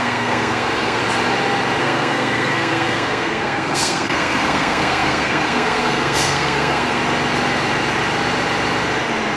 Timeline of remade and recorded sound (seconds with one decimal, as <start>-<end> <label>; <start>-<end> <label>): 0.0-1.0 remade; 1.0-1.8 recorded; 1.8-7.0 remade; 7.0-9.4 recorded